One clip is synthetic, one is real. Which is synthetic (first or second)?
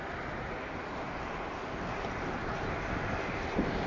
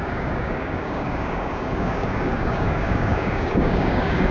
second